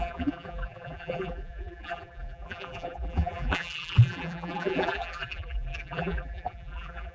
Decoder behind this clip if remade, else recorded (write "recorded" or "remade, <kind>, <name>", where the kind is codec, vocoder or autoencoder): remade, vocoder, BigVGAN v2